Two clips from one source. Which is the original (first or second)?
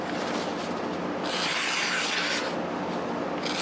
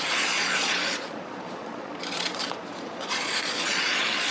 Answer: first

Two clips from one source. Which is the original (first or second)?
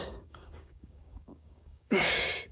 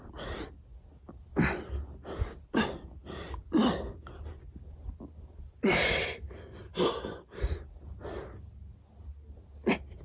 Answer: second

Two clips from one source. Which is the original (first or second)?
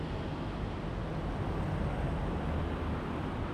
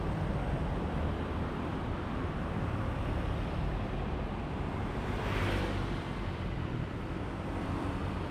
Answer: first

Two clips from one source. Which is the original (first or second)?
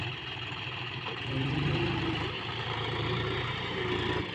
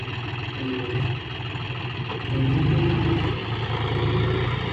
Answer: second